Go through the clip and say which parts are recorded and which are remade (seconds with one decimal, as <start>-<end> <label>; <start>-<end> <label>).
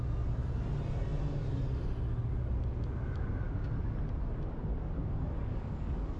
0.0-4.6 recorded; 4.6-6.2 remade